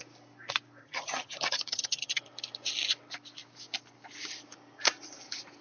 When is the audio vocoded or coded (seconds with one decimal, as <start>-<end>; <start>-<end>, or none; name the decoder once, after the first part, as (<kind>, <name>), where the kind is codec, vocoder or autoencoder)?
0.8-2.2 (vocoder, HiFi-GAN)